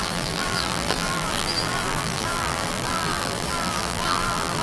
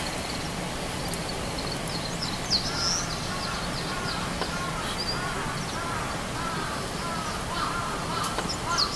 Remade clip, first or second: first